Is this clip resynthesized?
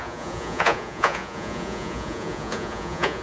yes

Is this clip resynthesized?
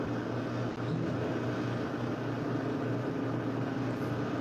no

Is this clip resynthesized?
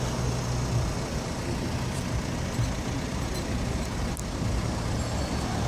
no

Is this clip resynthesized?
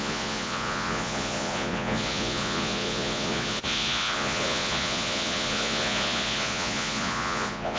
yes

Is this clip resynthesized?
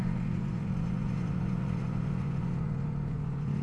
yes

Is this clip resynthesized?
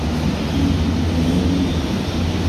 no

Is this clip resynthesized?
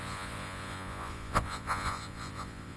yes